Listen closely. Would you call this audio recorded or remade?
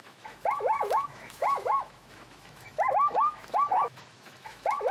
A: remade